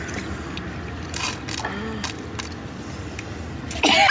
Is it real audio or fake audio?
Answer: real